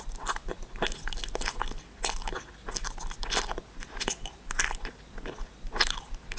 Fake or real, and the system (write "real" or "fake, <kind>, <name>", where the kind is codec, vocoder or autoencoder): real